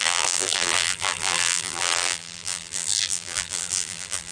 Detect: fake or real fake